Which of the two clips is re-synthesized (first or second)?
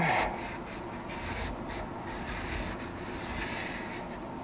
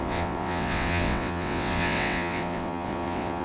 second